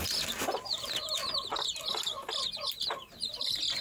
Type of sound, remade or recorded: recorded